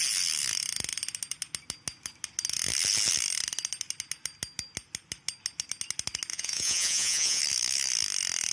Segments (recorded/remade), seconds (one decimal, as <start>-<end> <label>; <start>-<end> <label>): 0.0-6.3 recorded; 6.3-7.4 remade; 7.4-8.5 recorded